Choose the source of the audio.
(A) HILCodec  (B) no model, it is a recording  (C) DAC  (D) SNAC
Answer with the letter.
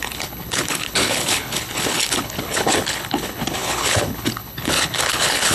A